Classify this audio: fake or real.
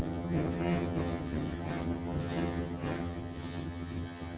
fake